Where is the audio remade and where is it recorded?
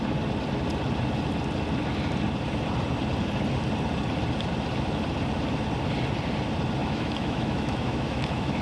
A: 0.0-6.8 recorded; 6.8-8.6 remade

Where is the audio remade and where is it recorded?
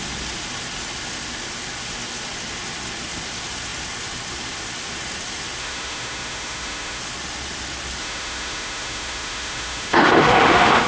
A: 0.0-5.6 recorded; 5.6-7.0 remade; 7.0-8.0 recorded; 8.0-10.9 remade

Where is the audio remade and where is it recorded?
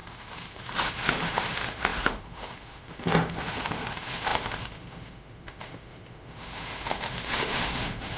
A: 0.0-8.2 remade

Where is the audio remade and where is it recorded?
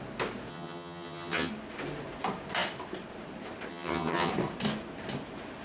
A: 0.0-0.5 recorded; 0.5-1.5 remade; 1.5-3.7 recorded; 3.7-4.3 remade; 4.3-5.6 recorded